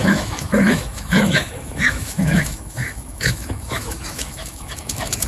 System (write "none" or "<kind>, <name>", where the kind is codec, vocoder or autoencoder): autoencoder, DAC-VAE